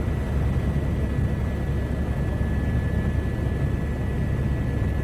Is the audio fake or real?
real